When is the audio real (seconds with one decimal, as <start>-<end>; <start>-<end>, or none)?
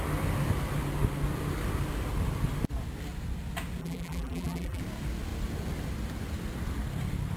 0.0-3.8; 4.8-7.4